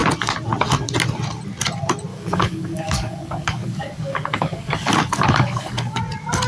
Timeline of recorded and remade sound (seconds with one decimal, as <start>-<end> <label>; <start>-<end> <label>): 0.0-2.1 recorded; 2.1-6.0 remade; 6.0-6.5 recorded